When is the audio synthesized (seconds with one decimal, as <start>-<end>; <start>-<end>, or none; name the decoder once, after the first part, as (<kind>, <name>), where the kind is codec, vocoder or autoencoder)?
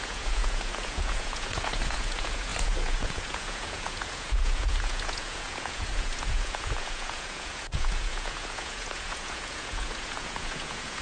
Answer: 0.0-11.0 (vocoder, Vocos)